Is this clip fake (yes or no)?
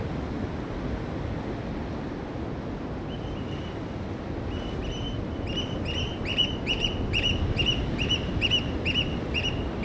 no